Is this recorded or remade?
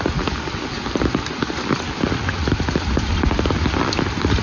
recorded